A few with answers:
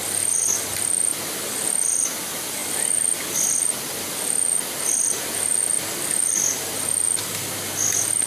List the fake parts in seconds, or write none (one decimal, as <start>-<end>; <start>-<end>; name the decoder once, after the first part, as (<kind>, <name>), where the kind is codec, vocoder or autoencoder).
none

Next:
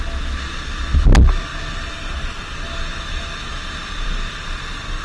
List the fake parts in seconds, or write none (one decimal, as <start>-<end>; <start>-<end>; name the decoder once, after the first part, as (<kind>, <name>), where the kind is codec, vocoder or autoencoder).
none

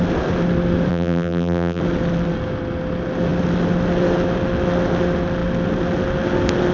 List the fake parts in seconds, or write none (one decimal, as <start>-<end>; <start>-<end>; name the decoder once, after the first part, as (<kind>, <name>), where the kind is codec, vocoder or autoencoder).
0.9-1.8 (vocoder, BigVGAN v2)